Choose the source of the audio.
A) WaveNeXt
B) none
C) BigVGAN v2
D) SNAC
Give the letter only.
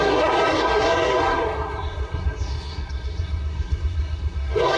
D